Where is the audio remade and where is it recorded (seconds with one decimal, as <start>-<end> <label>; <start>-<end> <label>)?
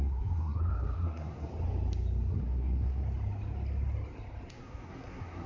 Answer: 0.0-1.5 remade; 1.5-2.3 recorded; 2.3-3.0 remade; 3.0-4.5 recorded; 4.5-5.5 remade